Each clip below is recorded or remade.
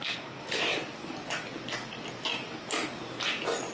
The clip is recorded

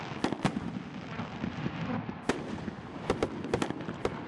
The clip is recorded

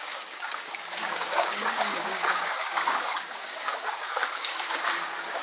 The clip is remade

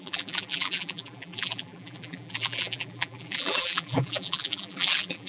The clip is remade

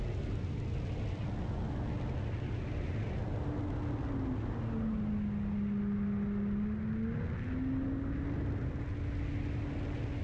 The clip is recorded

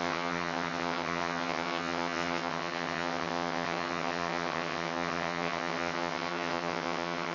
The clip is remade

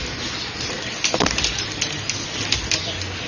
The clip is recorded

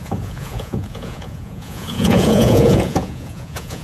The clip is remade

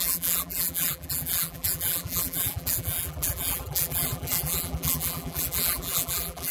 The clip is remade